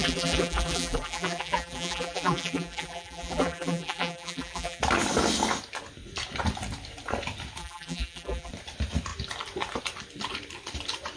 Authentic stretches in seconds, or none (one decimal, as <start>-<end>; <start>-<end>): 4.8-7.6; 8.5-11.2